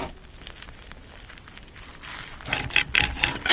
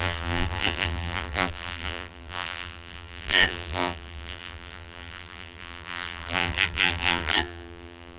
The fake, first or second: second